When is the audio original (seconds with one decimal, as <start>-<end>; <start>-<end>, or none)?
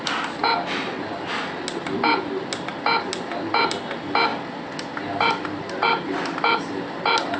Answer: 0.0-7.4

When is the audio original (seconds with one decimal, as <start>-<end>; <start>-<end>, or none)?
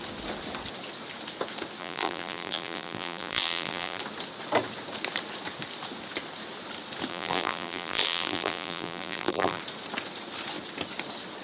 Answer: 0.0-1.8; 4.0-7.1; 9.6-11.4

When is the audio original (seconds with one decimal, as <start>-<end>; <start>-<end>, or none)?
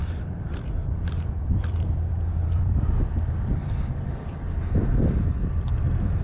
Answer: 3.7-6.2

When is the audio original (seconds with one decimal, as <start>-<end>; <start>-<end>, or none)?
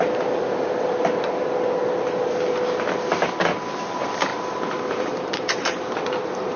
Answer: 0.0-4.3